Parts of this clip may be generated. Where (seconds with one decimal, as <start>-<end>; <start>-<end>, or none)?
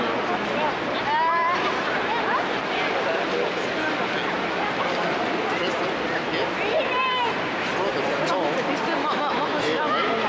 9.0-9.8